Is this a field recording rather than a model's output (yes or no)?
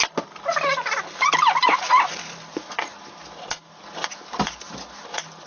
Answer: yes